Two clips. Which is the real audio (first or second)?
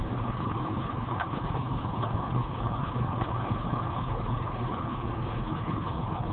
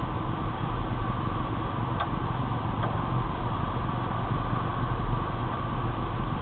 second